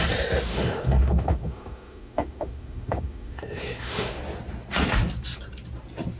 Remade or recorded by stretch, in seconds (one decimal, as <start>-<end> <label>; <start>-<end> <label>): 0.0-0.5 recorded; 0.5-4.2 remade; 4.2-6.2 recorded